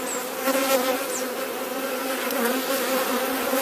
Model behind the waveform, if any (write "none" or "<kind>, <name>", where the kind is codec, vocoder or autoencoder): vocoder, BigVGAN v2